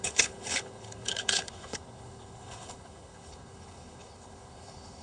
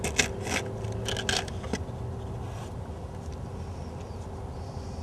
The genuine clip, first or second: second